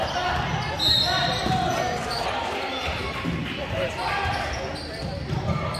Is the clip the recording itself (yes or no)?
yes